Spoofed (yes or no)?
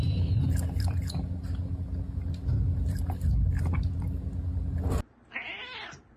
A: no